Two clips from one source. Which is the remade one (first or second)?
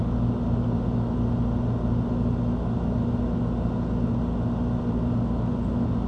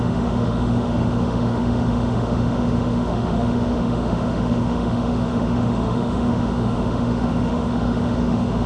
second